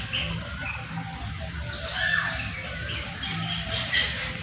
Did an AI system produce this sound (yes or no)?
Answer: no